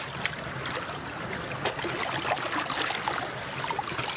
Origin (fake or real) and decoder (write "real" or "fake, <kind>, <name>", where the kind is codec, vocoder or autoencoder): real